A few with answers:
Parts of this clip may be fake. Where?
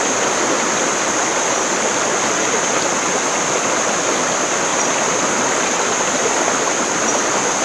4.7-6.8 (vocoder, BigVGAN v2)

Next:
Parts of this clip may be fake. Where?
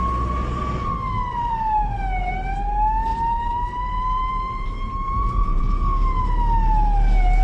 3.1-5.6 (vocoder, BigVGAN v2)